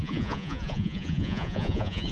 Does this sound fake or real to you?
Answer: fake